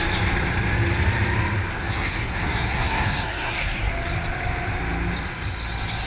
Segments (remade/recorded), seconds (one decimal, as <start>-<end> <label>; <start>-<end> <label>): 0.0-1.7 recorded; 1.7-3.9 remade; 3.9-6.1 recorded